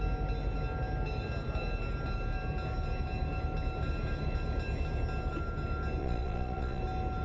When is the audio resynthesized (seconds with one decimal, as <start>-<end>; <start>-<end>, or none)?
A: 6.0-6.8